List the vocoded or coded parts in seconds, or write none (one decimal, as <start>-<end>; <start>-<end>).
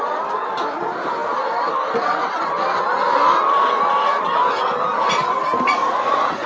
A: 5.8-6.5